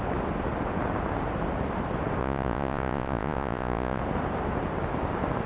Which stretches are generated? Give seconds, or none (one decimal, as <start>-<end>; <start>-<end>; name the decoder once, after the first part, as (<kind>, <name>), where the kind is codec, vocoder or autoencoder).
2.2-4.0 (vocoder, Vocos)